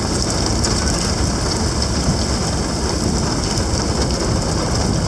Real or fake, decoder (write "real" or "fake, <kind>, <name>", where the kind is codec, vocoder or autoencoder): real